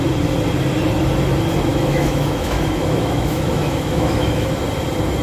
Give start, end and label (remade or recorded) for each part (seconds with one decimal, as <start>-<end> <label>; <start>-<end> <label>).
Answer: 0.0-1.7 recorded; 1.7-4.5 remade; 4.5-5.2 recorded